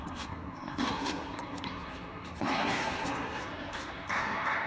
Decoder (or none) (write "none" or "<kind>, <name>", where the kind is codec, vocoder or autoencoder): codec, SNAC